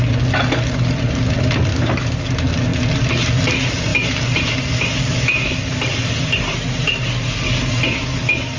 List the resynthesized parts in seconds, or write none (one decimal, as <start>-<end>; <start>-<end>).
1.7-2.3